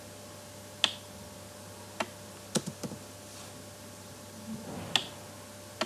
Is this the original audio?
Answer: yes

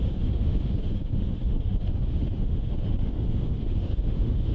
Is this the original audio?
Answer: no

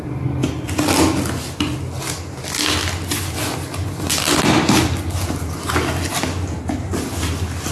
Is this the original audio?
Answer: yes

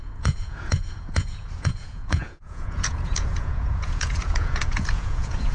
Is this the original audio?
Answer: no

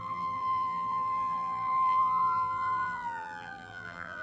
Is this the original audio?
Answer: no